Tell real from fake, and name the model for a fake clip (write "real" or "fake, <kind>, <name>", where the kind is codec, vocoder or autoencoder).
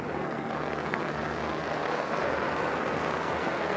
fake, codec, SNAC